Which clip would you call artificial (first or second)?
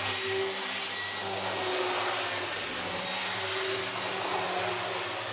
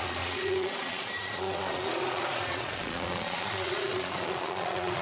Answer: second